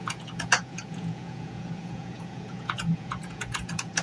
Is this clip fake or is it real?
fake